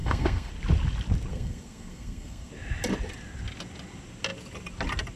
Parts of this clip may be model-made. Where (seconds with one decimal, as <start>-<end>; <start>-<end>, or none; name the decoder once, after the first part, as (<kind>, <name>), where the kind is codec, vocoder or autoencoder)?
0.0-0.5 (codec, SNAC); 1.3-2.5